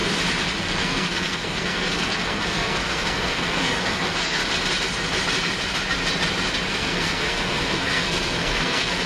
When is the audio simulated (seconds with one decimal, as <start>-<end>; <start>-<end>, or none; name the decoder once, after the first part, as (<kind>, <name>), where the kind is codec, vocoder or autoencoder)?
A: 0.6-4.4 (codec, SNAC); 6.7-9.1

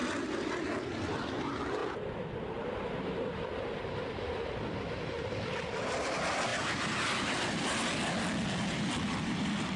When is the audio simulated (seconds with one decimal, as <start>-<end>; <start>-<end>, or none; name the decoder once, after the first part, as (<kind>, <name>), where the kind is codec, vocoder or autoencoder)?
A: none

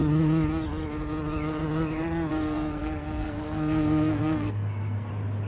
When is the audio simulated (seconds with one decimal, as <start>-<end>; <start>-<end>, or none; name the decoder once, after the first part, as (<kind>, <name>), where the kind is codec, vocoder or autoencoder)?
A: 2.3-5.1 (codec, SNAC)